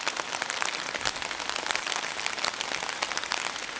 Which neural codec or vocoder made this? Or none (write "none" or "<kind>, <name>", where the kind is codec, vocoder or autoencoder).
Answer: none